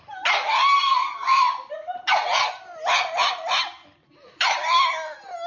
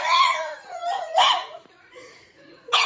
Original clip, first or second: first